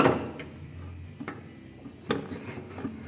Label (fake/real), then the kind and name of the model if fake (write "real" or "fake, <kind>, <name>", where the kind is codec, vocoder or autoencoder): real